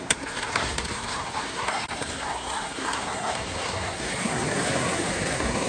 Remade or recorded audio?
remade